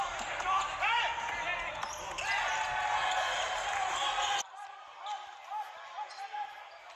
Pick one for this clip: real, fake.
real